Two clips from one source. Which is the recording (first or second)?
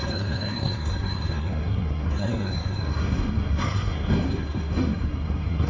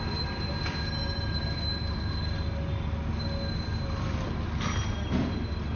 second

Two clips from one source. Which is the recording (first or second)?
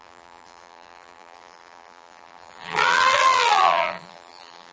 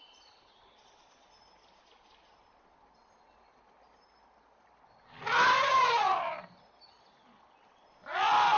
second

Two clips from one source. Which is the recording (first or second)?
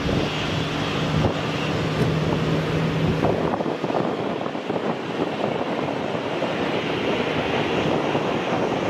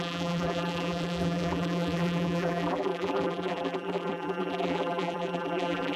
first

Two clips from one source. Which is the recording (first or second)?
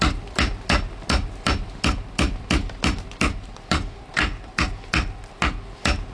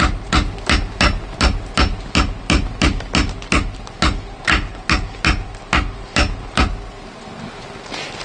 second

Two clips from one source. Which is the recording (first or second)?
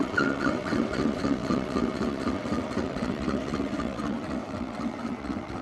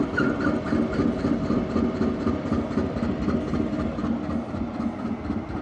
second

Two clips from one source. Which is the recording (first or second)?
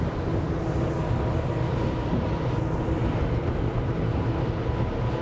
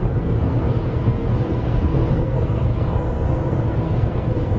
first